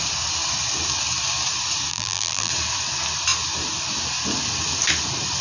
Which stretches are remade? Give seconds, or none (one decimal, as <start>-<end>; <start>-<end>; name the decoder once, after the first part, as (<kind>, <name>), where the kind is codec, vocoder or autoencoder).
1.9-2.5 (vocoder, BigVGAN v2)